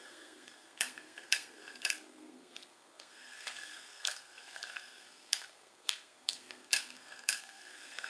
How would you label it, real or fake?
fake